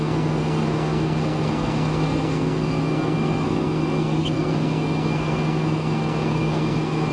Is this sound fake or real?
fake